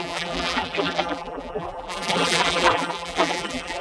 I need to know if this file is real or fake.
fake